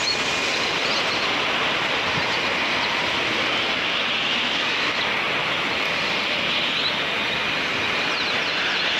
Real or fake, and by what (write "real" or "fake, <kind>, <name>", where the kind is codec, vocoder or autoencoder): real